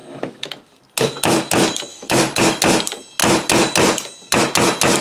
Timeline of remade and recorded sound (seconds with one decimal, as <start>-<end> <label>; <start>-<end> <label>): 0.0-0.5 remade; 0.5-1.9 recorded; 1.9-2.4 remade; 2.4-5.0 recorded